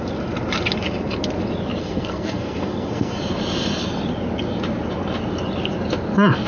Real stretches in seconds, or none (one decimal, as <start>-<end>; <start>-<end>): 0.0-1.8; 3.2-6.5